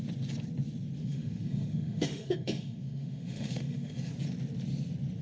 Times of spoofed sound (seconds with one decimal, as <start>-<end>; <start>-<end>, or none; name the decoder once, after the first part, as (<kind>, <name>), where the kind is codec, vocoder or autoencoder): 1.0-4.1 (autoencoder, DAC-VAE)

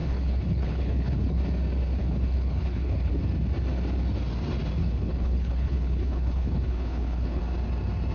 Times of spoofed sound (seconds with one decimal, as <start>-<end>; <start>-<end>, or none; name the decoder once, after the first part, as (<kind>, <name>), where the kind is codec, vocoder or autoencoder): 0.0-1.4 (codec, HILCodec); 2.0-3.1; 4.8-7.4

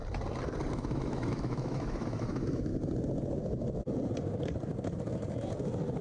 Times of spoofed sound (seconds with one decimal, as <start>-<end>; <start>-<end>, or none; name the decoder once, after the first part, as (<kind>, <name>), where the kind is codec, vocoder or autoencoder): 0.7-2.7 (autoencoder, DAC-VAE)

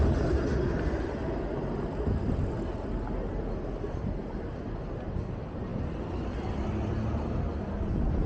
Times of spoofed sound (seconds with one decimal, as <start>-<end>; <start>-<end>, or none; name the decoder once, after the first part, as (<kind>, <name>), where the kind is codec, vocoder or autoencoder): none

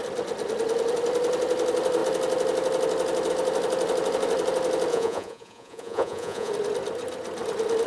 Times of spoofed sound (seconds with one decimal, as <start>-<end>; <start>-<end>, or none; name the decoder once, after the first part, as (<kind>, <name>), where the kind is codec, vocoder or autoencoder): 4.9-6.5 (vocoder, Vocos)

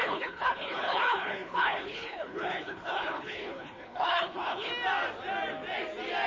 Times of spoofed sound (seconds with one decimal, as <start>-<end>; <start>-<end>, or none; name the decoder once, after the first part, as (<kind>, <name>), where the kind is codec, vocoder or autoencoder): 0.0-4.7 (codec, HILCodec)

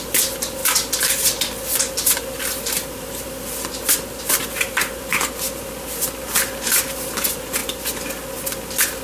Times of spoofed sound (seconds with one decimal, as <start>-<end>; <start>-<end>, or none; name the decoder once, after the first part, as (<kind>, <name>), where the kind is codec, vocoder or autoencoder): none

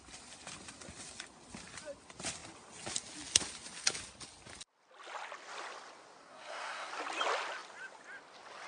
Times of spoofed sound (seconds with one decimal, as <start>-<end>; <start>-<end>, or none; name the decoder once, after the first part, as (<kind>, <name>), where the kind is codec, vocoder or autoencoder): 6.2-6.9 (codec, SNAC)